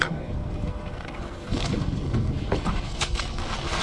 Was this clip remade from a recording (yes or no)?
yes